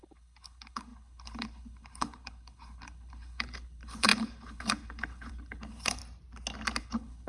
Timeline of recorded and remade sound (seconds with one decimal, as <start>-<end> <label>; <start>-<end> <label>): 0.0-6.0 remade; 6.0-6.8 recorded; 6.8-7.3 remade